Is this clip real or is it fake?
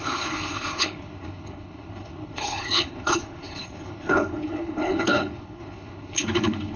fake